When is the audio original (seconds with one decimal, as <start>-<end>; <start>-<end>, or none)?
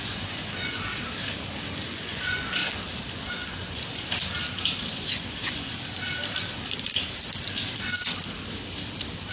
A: 0.9-1.7; 2.6-3.1; 3.9-4.9; 5.7-9.3